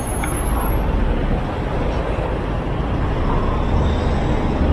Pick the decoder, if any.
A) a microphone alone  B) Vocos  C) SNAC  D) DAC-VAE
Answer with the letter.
A